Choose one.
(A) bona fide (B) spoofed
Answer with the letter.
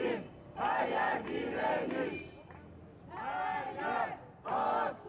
A